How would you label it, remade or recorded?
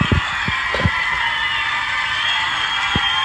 recorded